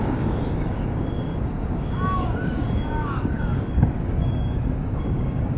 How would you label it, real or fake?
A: fake